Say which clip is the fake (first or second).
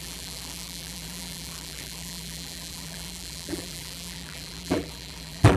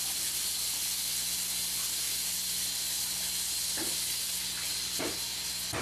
first